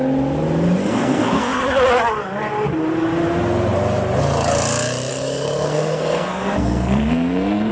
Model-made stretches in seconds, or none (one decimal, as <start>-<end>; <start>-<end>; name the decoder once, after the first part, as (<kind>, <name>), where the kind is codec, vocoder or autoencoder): 0.8-1.6 (codec, SNAC); 5.1-7.7